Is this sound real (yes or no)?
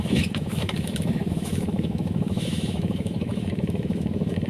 no